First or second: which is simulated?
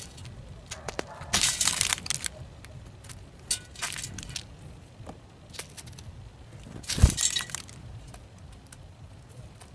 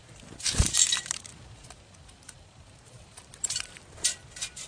second